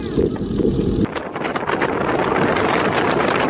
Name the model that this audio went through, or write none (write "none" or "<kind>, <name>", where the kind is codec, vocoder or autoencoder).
vocoder, BigVGAN v2